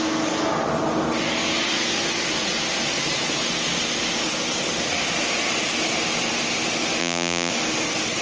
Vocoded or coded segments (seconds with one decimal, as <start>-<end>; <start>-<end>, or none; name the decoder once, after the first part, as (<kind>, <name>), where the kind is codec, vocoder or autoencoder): 7.0-7.5 (vocoder, BigVGAN v2)